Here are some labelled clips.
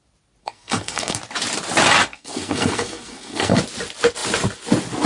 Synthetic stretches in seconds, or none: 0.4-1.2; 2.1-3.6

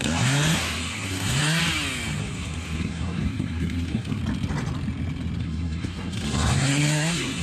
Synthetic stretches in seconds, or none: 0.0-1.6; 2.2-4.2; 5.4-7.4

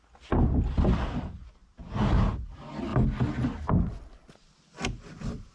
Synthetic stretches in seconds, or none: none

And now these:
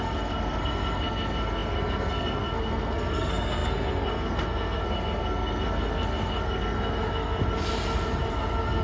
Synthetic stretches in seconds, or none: 0.0-7.4; 8.3-8.8

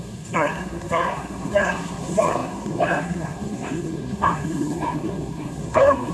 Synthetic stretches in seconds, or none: 0.0-6.1

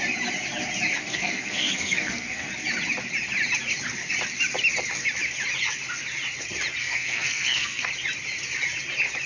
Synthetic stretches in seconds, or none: 1.0-2.5; 6.8-7.9

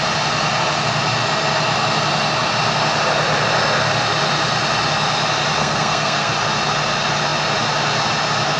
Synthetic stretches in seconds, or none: 5.6-6.3

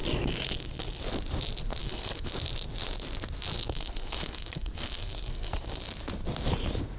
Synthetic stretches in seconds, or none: 0.0-1.0; 1.8-2.3; 3.6-5.8